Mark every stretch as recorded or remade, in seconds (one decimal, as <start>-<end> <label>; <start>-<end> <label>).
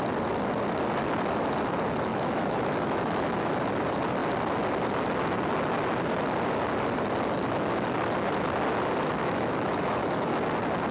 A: 0.0-2.1 recorded; 2.1-3.6 remade; 3.6-9.2 recorded; 9.2-10.3 remade; 10.3-10.9 recorded